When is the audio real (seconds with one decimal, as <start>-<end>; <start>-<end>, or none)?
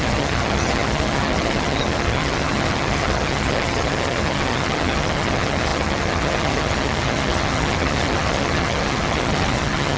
none